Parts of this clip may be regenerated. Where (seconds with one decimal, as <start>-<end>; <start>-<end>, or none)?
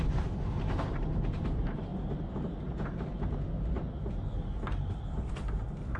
0.0-1.9; 5.3-6.0